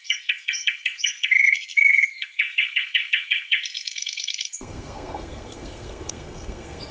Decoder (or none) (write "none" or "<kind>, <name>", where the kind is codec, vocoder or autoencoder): codec, SNAC